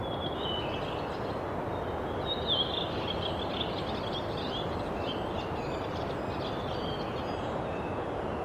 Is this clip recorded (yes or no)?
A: yes